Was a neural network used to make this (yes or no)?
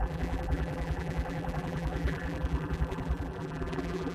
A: yes